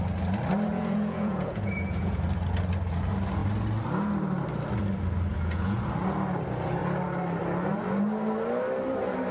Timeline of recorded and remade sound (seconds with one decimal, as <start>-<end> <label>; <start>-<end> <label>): 0.0-0.7 recorded; 0.7-2.2 remade; 2.2-5.3 recorded; 5.3-5.8 remade; 5.8-9.3 recorded